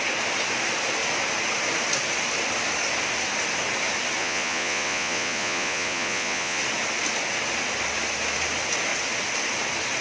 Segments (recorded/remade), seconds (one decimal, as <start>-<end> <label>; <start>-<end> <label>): 0.0-4.2 recorded; 4.2-6.6 remade; 6.6-10.0 recorded